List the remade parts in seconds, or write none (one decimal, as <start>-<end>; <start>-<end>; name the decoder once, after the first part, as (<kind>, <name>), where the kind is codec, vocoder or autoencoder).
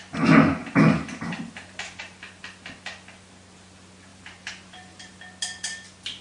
0.6-2.0 (vocoder, BigVGAN v2); 4.1-5.1